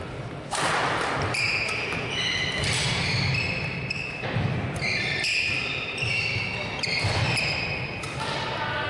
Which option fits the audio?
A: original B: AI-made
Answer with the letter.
A